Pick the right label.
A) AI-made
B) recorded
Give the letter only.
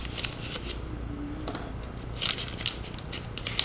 B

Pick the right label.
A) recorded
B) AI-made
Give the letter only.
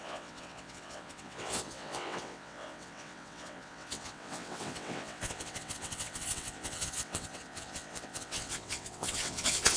B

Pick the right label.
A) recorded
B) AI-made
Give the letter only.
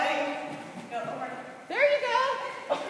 A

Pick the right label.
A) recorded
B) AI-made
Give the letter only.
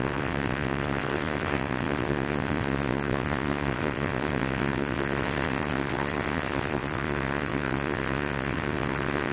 B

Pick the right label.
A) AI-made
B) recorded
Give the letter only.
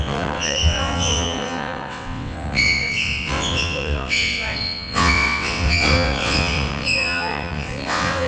A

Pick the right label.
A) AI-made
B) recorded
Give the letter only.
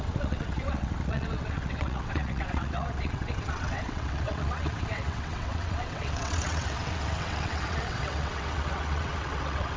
A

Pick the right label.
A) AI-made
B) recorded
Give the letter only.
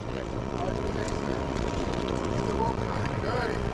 A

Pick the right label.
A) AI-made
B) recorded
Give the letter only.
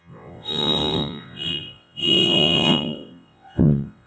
A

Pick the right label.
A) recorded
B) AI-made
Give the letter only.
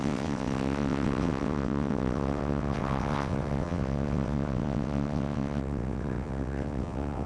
B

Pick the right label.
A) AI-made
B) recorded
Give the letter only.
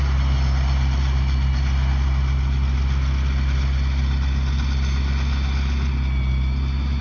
B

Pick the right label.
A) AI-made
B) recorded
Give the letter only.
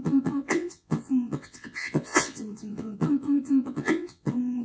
A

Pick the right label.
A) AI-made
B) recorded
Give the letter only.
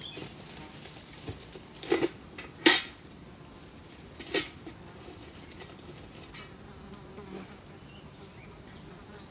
B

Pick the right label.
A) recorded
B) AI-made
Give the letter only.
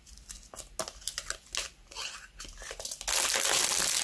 A